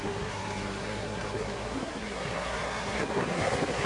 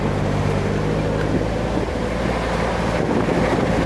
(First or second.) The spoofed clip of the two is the first